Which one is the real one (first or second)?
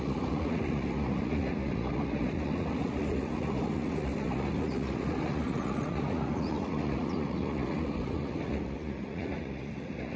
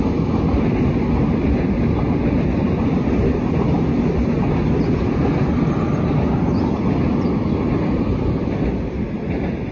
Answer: second